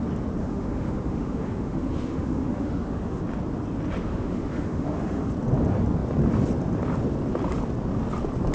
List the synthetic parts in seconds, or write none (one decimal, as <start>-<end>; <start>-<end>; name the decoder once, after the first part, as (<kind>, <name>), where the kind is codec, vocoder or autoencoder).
0.4-3.2 (autoencoder, DAC-VAE); 4.0-5.3